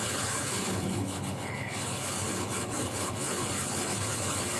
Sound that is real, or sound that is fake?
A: fake